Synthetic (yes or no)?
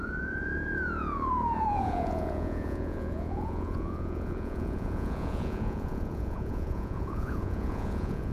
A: yes